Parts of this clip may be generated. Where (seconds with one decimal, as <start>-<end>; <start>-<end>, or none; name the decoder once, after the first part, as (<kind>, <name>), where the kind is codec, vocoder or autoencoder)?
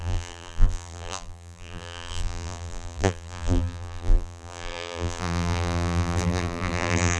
0.0-7.2 (vocoder, BigVGAN v2)